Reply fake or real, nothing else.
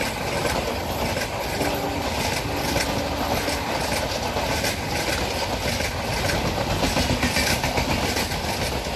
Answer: real